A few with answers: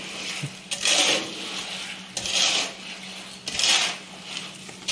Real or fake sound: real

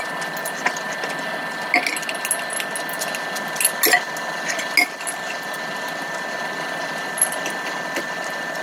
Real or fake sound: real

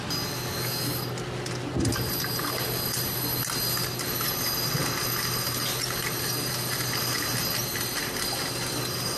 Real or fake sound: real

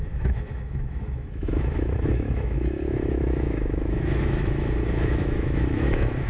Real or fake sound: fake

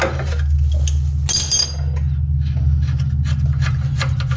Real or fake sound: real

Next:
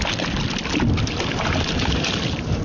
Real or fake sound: real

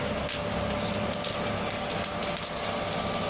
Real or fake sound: real